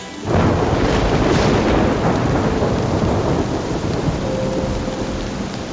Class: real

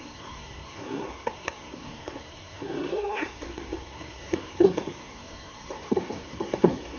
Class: fake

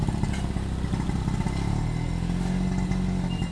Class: real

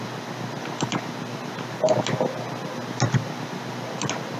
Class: real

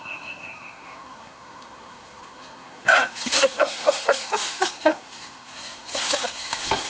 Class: fake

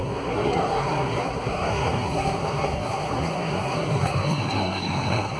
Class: fake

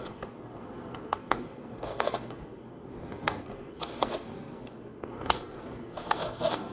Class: fake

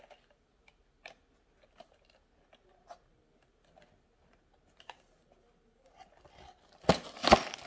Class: real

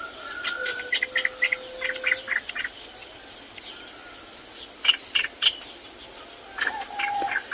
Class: real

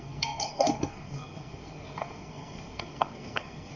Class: fake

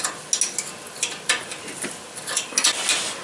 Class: real